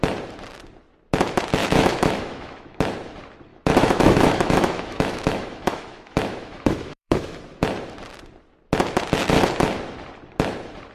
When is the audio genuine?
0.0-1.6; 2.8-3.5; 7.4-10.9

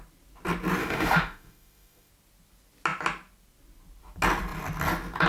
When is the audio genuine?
0.0-0.8; 2.1-5.3

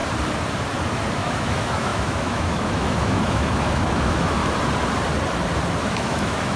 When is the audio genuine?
0.0-1.1; 4.4-5.8

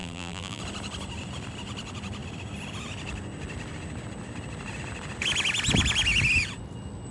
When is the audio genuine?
0.6-7.1

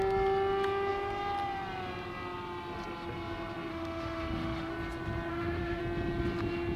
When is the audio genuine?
0.0-3.7; 4.7-5.3; 5.8-6.8